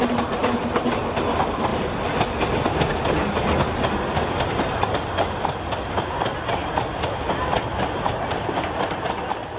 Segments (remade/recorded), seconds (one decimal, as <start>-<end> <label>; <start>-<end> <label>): 0.0-9.6 recorded